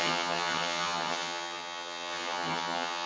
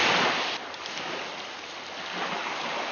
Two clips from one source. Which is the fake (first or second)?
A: first